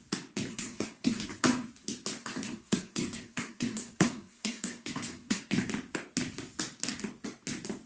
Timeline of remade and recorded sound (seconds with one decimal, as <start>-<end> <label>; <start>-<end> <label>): 0.0-0.5 recorded; 0.5-1.7 remade; 1.7-2.2 recorded; 2.2-5.4 remade; 5.4-7.9 recorded